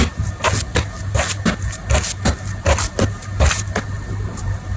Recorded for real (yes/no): yes